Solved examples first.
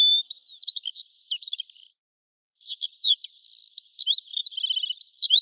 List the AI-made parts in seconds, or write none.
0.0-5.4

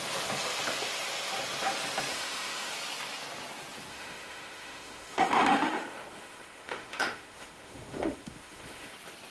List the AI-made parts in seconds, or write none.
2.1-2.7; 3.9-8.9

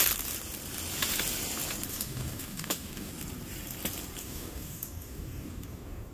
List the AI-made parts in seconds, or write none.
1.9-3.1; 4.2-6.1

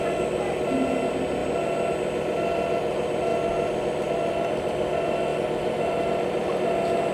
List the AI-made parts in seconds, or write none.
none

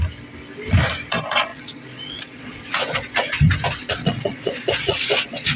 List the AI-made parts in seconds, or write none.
1.5-3.3; 3.8-5.6

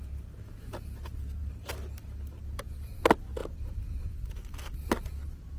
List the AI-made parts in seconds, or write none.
none

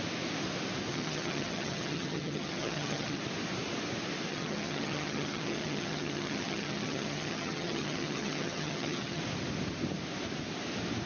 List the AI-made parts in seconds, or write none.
0.9-3.2; 4.3-9.2